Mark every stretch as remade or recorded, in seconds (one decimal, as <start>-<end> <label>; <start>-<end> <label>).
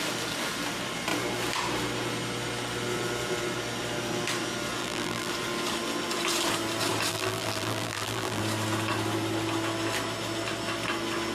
0.0-4.8 recorded; 4.8-5.3 remade; 5.3-7.1 recorded; 7.1-8.4 remade; 8.4-11.3 recorded